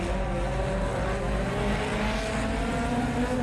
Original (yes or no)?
yes